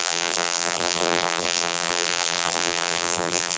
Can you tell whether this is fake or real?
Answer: fake